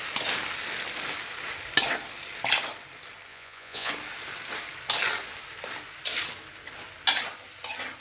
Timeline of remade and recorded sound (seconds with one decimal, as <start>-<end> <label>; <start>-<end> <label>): 0.0-3.3 recorded; 3.3-3.9 remade; 3.9-8.0 recorded